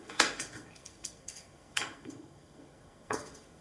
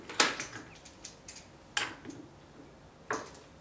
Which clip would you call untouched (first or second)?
second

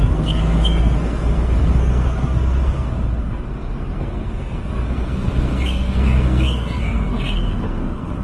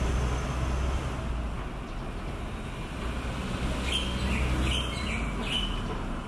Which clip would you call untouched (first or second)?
second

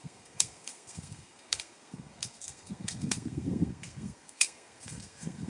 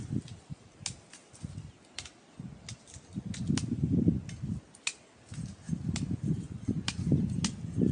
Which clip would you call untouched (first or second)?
second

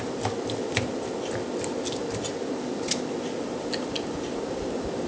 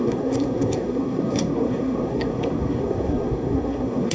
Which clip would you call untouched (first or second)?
first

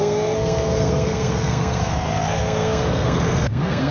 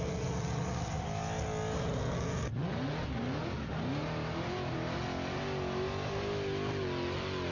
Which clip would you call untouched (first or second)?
second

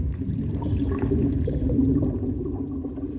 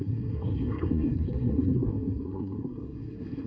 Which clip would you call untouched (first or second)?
first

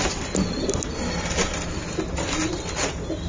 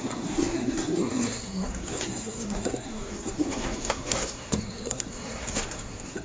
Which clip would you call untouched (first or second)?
first